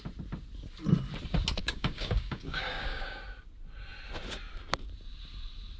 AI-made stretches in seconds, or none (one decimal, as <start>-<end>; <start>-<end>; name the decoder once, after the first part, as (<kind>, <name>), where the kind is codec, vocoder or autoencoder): 1.6-3.2 (codec, DAC)